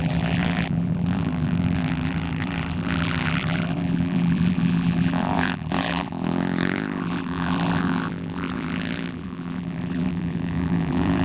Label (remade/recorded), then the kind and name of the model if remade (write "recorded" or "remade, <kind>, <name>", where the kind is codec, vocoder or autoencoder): remade, vocoder, BigVGAN v2